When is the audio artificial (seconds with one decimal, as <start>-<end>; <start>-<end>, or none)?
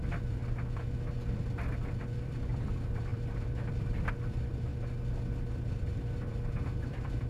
0.0-0.4; 2.0-4.7; 5.5-7.3